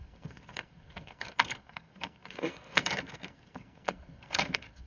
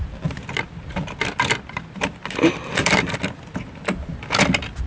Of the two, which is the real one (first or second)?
second